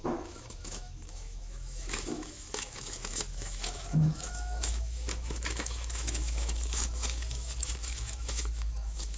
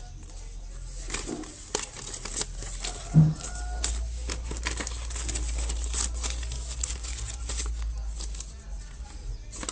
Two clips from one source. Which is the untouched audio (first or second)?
second